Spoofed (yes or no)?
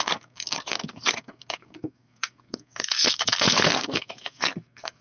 yes